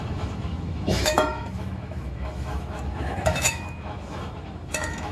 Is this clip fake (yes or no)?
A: yes